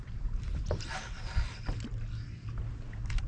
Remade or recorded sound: recorded